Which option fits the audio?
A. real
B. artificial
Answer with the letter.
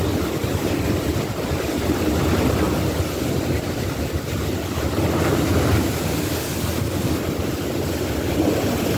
A